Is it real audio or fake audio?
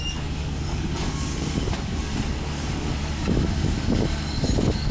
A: fake